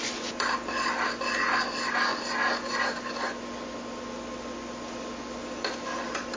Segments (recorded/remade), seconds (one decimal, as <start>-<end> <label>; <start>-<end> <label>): 0.0-6.4 recorded